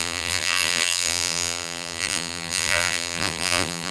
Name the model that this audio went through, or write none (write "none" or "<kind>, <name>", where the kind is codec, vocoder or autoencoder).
vocoder, BigVGAN v2